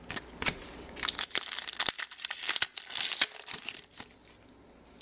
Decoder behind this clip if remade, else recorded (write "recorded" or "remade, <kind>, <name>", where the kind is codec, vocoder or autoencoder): recorded